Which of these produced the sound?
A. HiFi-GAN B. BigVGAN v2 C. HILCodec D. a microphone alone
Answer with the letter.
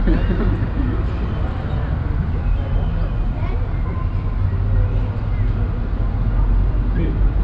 D